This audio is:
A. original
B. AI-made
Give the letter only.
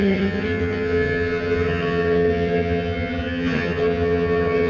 B